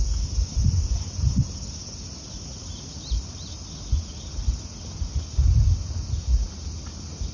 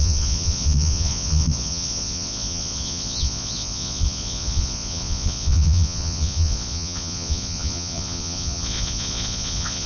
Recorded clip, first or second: first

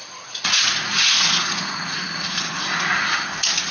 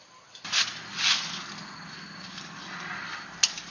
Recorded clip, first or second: second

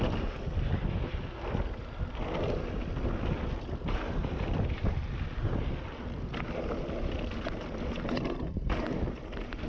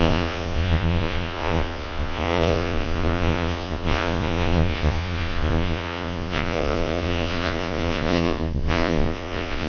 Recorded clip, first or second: first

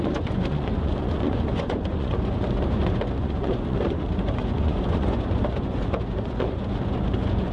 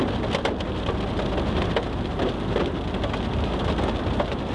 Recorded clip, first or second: second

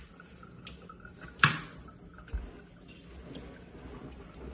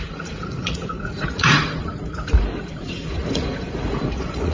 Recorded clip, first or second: first